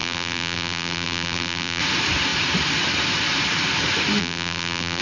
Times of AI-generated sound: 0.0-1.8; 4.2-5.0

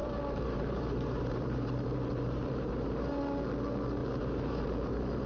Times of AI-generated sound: 0.0-3.2; 4.0-5.3

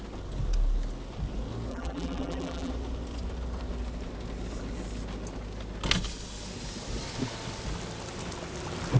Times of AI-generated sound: 1.7-2.7

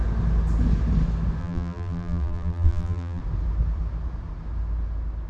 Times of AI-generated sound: 1.4-3.2

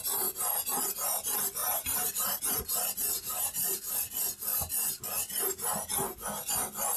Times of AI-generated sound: 1.6-2.7; 3.3-3.9